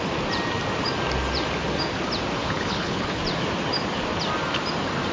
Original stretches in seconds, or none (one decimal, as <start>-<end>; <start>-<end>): 0.0-2.4; 3.2-5.1